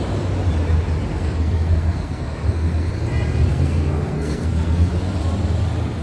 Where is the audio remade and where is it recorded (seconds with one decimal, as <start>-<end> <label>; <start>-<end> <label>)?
0.0-1.1 recorded; 1.1-2.9 remade; 2.9-3.5 recorded; 3.5-4.9 remade; 4.9-6.0 recorded